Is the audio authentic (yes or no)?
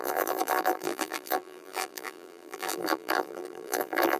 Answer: no